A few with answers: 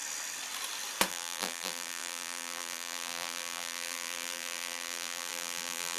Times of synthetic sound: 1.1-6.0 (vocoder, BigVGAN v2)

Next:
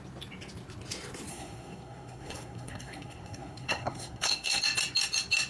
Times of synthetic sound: 1.3-4.6 (codec, SNAC)

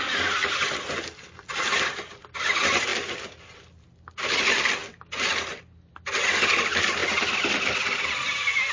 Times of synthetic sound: none

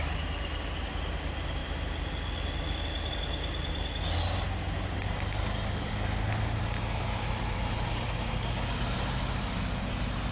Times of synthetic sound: none

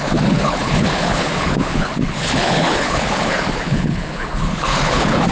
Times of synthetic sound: 0.0-5.3 (codec, HILCodec)

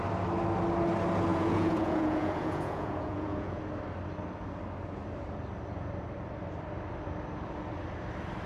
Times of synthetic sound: 1.3-3.6 (vocoder, Vocos)

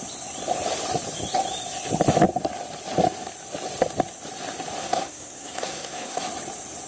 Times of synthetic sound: 4.8-6.2 (codec, SNAC)

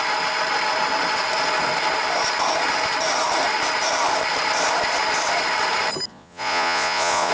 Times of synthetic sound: 6.1-7.3 (vocoder, Vocos)